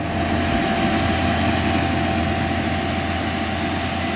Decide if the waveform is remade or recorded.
recorded